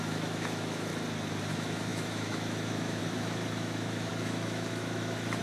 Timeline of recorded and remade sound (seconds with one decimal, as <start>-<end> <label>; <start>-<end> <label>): 0.0-0.9 remade; 0.9-1.5 recorded; 1.5-5.4 remade